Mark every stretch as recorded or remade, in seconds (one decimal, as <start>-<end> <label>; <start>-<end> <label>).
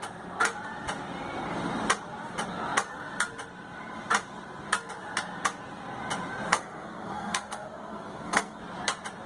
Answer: 0.0-6.5 recorded; 6.5-8.6 remade; 8.6-9.3 recorded